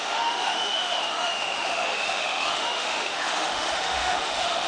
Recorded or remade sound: remade